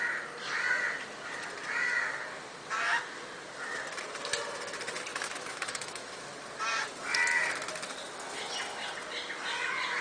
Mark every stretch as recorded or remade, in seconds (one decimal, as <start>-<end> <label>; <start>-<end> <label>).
0.0-5.1 recorded; 5.1-6.2 remade; 6.2-10.0 recorded